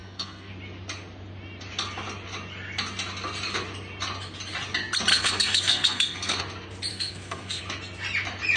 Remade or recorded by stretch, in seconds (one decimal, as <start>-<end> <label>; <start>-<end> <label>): 0.0-0.5 remade; 0.5-5.1 recorded; 5.1-6.4 remade; 6.4-6.9 recorded; 6.9-7.6 remade; 7.6-8.6 recorded